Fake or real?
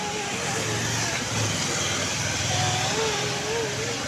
real